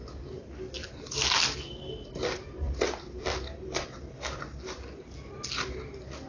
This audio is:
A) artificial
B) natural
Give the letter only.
B